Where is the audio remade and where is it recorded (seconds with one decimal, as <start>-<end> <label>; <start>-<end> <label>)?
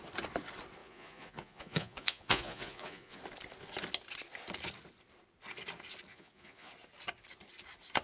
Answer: 0.0-0.8 recorded; 0.8-3.2 remade; 3.2-6.1 recorded; 6.1-6.7 remade; 6.7-8.0 recorded